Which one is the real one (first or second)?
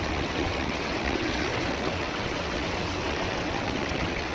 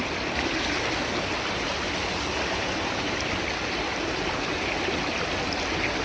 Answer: second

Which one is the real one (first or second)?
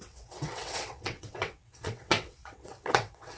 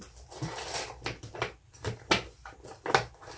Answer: second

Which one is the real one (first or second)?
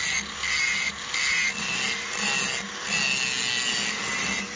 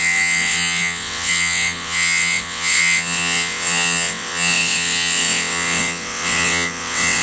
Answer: first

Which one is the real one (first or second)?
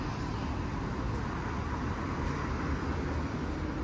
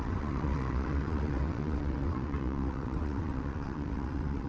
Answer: first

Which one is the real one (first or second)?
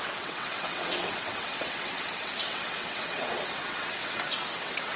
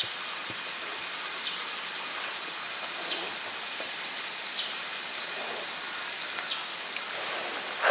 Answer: second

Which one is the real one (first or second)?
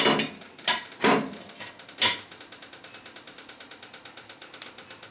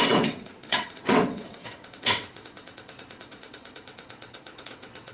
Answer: first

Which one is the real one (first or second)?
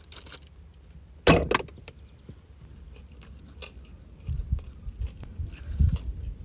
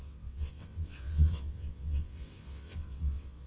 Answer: first